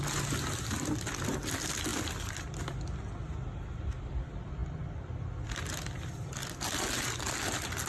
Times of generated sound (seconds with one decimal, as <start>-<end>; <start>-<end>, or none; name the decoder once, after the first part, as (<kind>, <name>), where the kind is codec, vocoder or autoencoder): none